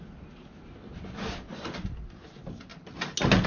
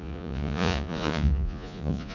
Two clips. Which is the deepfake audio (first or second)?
second